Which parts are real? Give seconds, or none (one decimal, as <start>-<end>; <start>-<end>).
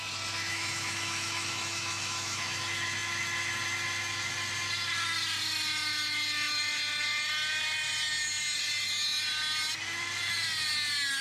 0.0-0.5; 2.6-11.2